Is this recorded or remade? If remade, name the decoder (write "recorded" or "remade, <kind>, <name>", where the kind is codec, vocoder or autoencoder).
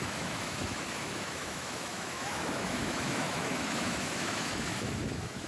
remade, autoencoder, DAC-VAE